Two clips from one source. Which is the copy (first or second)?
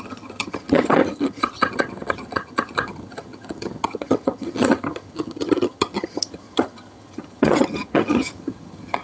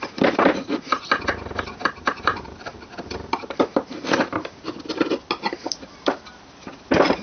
first